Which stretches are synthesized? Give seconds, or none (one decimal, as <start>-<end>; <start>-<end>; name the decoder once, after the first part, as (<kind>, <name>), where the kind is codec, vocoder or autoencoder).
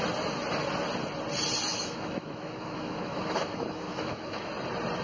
1.7-4.5 (autoencoder, DAC-VAE)